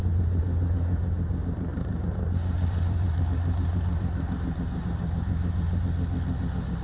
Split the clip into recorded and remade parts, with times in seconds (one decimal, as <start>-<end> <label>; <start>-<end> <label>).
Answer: 0.0-1.7 recorded; 1.7-5.8 remade; 5.8-6.8 recorded